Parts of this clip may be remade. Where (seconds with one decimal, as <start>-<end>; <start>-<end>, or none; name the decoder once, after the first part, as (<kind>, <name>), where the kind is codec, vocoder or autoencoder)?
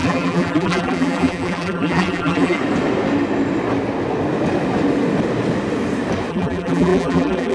0.0-2.6 (vocoder, BigVGAN v2); 6.3-7.5